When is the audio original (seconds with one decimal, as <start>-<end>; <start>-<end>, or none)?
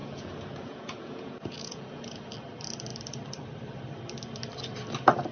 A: 2.2-5.3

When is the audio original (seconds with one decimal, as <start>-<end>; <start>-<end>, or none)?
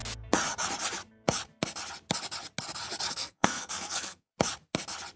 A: 0.0-3.1; 4.3-5.2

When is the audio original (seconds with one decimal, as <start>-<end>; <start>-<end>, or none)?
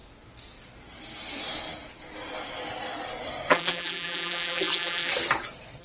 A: 0.0-3.5; 5.1-5.8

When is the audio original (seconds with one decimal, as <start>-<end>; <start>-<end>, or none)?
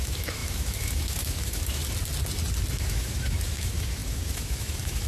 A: 1.8-2.7